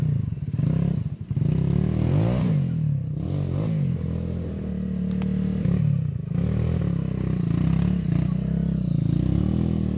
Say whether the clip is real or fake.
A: real